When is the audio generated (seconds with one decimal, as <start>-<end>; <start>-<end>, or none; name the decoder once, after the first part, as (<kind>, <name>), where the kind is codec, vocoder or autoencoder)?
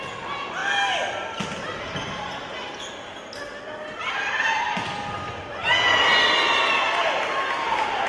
none